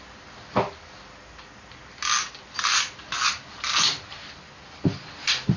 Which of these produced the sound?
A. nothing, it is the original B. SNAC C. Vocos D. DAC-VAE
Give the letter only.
A